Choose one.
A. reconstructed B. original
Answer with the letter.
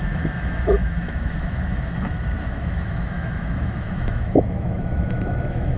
A